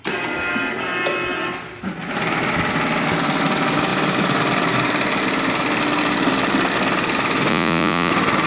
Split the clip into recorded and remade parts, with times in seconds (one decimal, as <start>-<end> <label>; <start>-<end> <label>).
0.0-7.5 recorded; 7.5-8.1 remade; 8.1-8.5 recorded